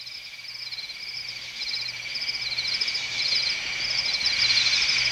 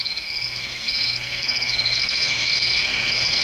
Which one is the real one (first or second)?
first